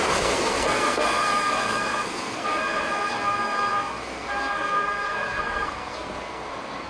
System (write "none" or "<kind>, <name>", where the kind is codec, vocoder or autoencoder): codec, SNAC